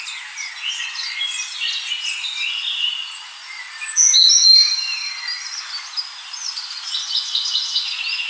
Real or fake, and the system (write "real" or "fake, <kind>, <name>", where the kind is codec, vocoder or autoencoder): real